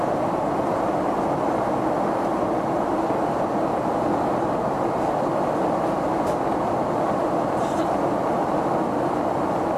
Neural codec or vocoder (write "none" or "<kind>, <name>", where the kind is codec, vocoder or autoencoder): none